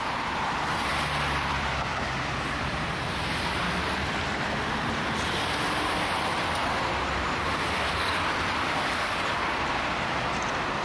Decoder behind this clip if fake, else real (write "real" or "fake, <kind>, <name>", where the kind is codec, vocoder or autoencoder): fake, vocoder, BigVGAN v2